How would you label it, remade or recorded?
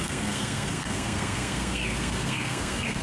remade